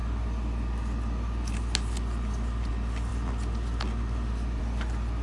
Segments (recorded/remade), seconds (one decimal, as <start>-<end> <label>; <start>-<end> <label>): 0.0-5.2 recorded